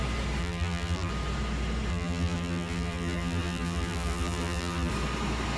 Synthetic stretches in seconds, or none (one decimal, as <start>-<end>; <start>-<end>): 0.4-1.1; 1.9-4.9